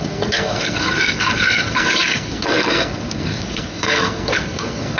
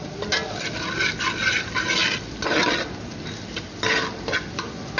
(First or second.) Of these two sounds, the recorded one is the second